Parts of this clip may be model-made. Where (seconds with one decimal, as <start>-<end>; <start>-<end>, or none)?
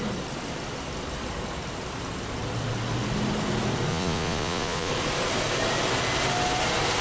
3.9-4.9